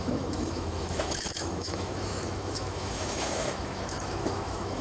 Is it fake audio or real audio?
fake